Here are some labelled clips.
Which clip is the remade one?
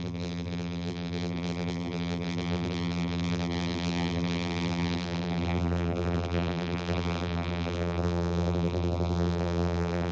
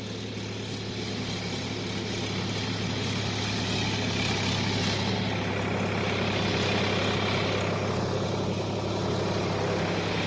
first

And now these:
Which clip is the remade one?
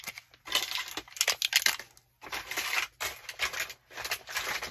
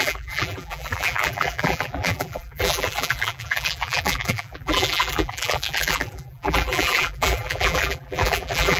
second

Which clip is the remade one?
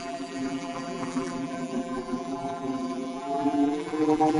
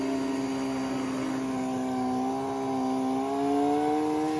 first